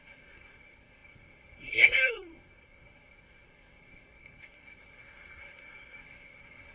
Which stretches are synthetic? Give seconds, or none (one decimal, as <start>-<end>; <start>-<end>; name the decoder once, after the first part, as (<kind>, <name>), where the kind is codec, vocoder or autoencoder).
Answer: 0.0-6.7 (codec, SNAC)